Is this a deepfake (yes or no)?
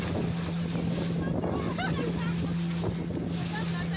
no